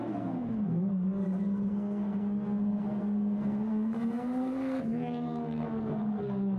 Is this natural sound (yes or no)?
no